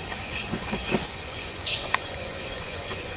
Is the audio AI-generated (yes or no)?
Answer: yes